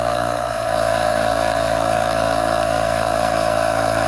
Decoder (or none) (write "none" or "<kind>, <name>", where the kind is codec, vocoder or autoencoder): codec, SNAC